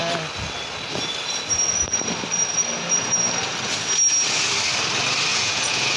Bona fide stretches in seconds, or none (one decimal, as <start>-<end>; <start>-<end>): 0.0-5.3